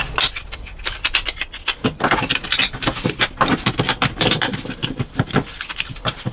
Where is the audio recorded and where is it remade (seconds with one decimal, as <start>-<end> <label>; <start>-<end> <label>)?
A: 0.0-6.3 recorded